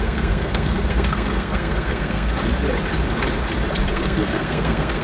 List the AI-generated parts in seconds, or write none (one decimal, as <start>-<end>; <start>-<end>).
0.0-2.4; 3.9-5.0